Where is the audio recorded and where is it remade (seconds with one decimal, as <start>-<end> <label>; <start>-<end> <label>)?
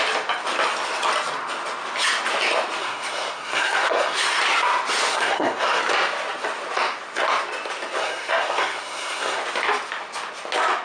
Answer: 0.0-2.8 recorded; 2.8-4.4 remade; 4.4-5.1 recorded; 5.1-5.8 remade; 5.8-8.0 recorded; 8.0-9.4 remade; 9.4-10.8 recorded